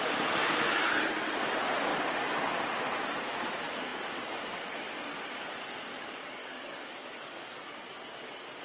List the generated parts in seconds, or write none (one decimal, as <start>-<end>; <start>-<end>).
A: 6.4-7.6